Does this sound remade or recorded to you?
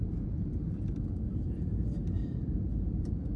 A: remade